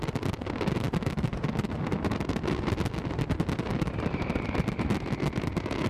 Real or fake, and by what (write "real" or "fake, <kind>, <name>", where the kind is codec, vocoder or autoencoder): real